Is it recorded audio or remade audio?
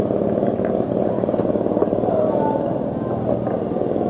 recorded